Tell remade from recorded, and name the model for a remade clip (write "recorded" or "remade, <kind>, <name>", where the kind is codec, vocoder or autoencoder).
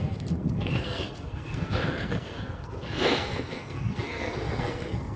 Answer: remade, codec, SNAC